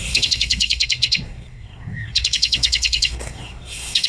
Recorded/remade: remade